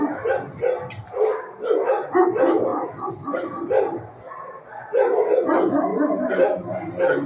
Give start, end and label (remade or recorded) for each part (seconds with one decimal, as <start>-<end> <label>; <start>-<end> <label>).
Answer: 0.0-7.3 recorded